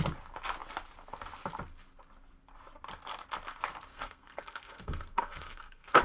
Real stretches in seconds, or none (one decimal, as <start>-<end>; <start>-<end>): 0.0-3.9